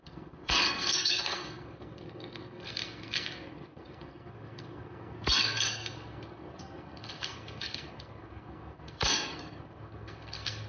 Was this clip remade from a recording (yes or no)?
yes